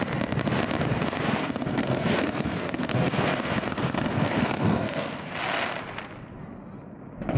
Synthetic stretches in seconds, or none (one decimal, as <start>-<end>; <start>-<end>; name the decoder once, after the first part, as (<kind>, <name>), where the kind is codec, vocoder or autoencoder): 1.4-5.3 (codec, SNAC)